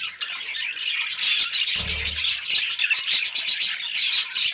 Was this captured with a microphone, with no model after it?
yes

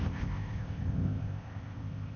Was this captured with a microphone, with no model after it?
no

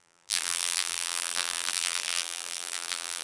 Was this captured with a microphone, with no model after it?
no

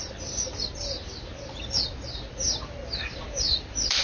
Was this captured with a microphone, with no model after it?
yes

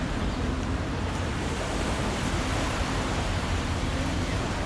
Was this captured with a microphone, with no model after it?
no